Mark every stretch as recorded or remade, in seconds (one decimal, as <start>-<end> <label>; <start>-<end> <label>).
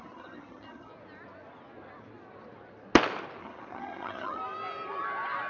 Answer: 0.0-0.9 remade; 0.9-3.4 recorded; 3.4-4.4 remade; 4.4-5.5 recorded